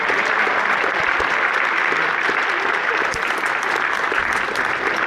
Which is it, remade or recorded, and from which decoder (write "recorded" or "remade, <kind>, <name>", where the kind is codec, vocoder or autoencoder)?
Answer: recorded